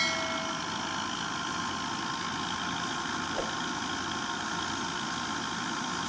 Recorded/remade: recorded